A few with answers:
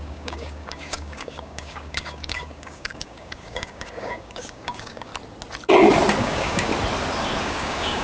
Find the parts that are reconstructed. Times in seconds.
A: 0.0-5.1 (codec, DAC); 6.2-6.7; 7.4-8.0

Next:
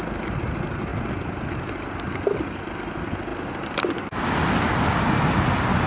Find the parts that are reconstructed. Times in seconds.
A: none

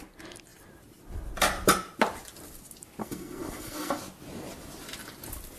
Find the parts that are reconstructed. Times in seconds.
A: 3.0-4.0 (codec, SNAC)

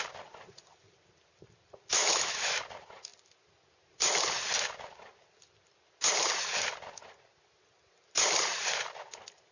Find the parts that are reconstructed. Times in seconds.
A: 2.0-2.6 (autoencoder, DAC-VAE)

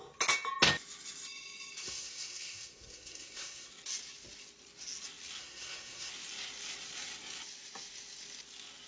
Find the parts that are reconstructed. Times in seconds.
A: 1.8-3.7 (codec, SNAC); 5.4-6.1

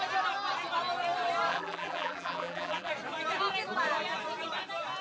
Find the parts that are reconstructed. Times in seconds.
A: 1.5-2.9 (vocoder, BigVGAN v2)